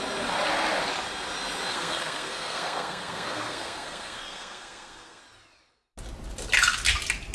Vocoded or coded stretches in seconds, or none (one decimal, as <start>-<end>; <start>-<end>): 1.7-5.2